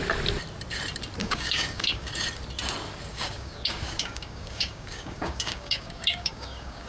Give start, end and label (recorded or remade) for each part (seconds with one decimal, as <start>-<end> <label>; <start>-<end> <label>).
0.0-1.2 recorded; 1.2-2.1 remade; 2.1-3.1 recorded; 3.1-6.9 remade